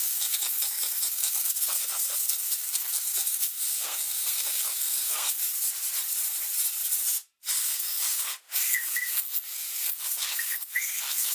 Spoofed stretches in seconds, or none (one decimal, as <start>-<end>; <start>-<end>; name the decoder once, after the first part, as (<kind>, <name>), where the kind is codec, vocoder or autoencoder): 0.0-5.4 (codec, SNAC); 7.5-11.3

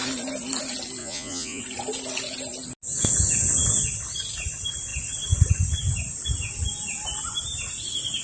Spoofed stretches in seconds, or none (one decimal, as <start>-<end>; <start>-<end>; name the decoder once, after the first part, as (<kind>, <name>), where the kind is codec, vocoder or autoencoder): 1.0-1.6 (vocoder, Vocos)